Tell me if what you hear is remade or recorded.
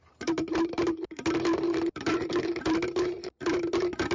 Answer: remade